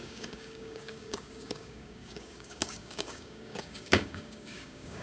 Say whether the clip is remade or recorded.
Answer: remade